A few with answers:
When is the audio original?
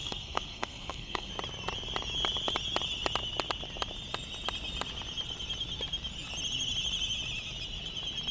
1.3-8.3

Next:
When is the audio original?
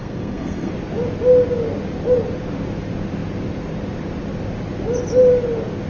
0.7-5.9